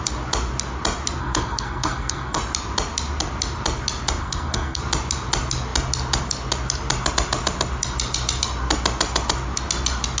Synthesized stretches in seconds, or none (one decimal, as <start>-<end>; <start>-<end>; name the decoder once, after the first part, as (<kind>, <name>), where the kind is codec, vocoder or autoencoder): 1.2-2.4 (codec, SNAC); 4.2-4.8